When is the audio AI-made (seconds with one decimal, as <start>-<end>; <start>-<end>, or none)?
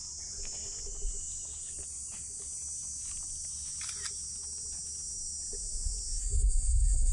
none